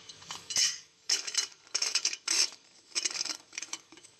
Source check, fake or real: fake